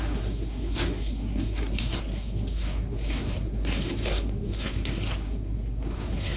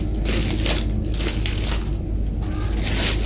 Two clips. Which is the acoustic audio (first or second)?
second